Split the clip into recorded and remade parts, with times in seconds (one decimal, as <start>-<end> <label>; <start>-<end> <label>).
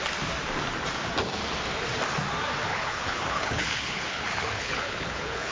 0.0-2.7 recorded; 2.7-5.5 remade